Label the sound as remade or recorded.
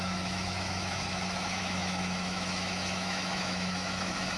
remade